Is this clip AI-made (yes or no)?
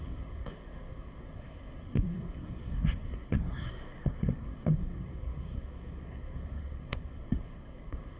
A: yes